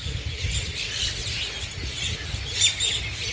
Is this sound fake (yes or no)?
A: no